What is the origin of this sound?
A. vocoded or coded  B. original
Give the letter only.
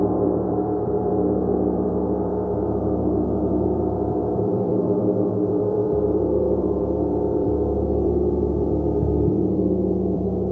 A